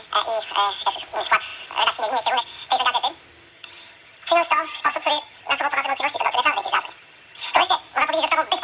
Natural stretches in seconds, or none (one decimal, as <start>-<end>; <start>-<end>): 0.0-3.5; 7.8-8.6